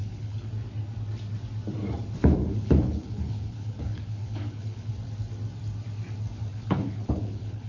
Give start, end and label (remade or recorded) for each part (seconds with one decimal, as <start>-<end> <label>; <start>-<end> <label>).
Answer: 0.0-0.5 remade; 0.5-2.2 recorded; 2.2-4.9 remade; 4.9-6.5 recorded; 6.5-7.7 remade